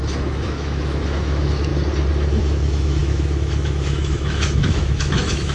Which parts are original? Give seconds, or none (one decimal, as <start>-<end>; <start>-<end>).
1.7-2.4